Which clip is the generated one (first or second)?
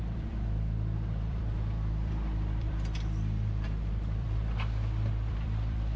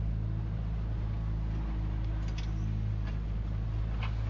first